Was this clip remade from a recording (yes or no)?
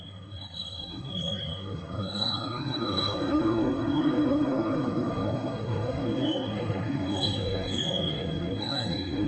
yes